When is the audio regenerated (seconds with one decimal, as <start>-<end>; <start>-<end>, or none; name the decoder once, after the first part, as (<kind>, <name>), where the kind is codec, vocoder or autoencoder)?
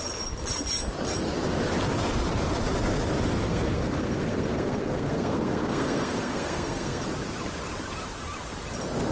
3.4-7.0 (codec, SNAC)